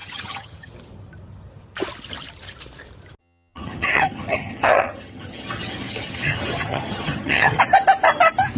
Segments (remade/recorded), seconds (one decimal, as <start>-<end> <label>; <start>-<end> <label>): 0.0-0.7 remade; 0.7-3.2 recorded; 3.2-7.6 remade; 7.6-8.6 recorded